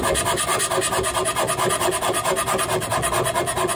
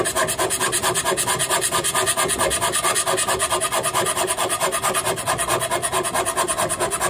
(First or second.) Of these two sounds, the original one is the first